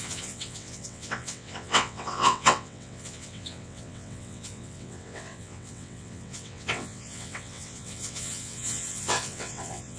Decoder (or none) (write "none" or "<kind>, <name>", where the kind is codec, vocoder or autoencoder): vocoder, WaveNeXt